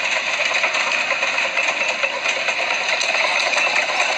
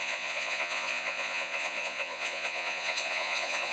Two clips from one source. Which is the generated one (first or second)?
second